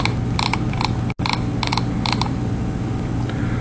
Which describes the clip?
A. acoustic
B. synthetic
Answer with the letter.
A